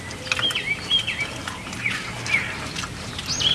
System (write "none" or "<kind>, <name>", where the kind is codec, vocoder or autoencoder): none